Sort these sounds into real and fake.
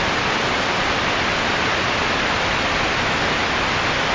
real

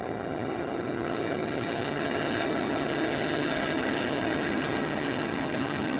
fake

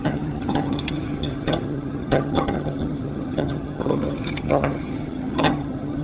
fake